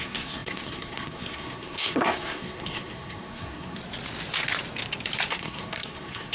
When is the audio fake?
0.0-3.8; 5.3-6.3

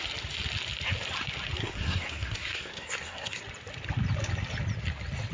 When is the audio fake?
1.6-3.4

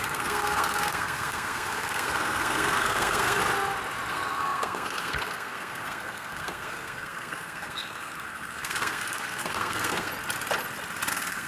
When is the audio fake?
0.0-3.4; 4.1-10.1; 11.1-11.5